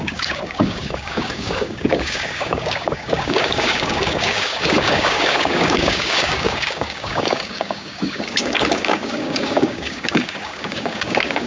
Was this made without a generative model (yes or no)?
no